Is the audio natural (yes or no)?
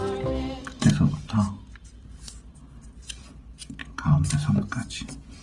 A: yes